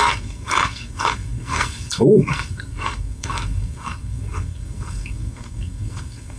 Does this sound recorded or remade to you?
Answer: remade